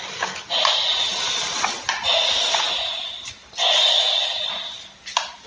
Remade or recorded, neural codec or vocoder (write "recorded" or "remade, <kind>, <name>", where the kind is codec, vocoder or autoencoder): recorded